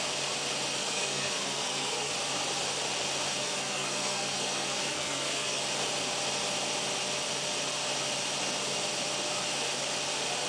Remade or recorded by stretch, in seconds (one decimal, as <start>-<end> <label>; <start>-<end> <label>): 0.0-0.8 recorded; 0.8-2.1 remade; 2.1-3.4 recorded; 3.4-5.6 remade; 5.6-10.5 recorded